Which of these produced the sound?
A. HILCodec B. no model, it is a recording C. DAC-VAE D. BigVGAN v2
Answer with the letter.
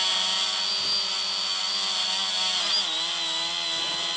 B